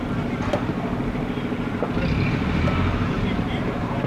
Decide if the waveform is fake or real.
real